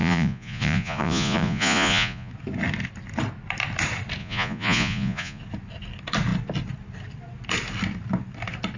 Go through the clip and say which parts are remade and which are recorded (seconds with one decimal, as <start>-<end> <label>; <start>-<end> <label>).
0.0-2.3 remade; 2.3-4.2 recorded; 4.2-5.4 remade; 5.4-8.8 recorded